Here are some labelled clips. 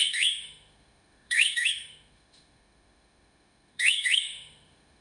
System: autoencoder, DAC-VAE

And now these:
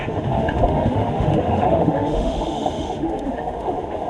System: autoencoder, DAC-VAE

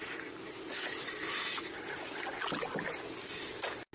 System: none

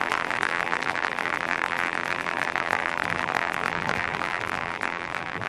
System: vocoder, BigVGAN v2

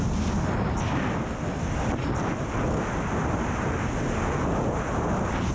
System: vocoder, BigVGAN v2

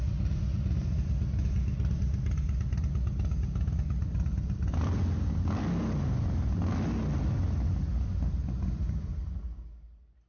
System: none